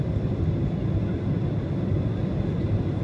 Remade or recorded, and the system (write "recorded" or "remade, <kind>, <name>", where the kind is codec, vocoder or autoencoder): recorded